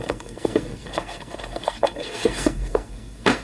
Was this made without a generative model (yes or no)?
no